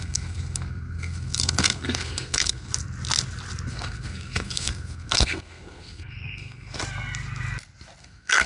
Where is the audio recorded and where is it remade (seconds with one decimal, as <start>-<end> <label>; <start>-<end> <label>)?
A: 0.0-2.7 remade; 2.7-3.7 recorded; 3.7-6.8 remade; 6.8-8.0 recorded; 8.0-8.5 remade